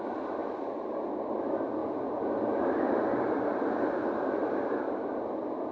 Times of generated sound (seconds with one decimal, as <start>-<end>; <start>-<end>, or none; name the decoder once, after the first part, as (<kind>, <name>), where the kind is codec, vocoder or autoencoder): 0.4-0.9 (vocoder, BigVGAN v2)